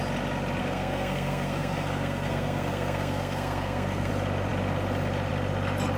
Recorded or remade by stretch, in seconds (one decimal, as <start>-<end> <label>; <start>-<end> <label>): 0.0-0.6 recorded; 0.6-4.1 remade; 4.1-6.0 recorded